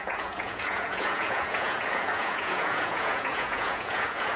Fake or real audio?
fake